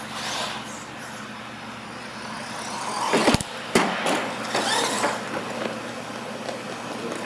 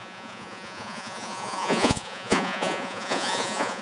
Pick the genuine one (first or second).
first